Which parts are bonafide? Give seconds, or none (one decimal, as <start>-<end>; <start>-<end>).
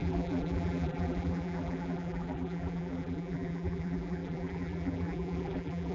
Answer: none